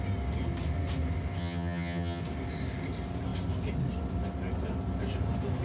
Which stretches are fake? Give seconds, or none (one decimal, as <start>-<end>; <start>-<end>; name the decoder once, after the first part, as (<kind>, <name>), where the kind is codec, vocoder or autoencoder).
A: 1.4-2.2 (vocoder, HiFi-GAN)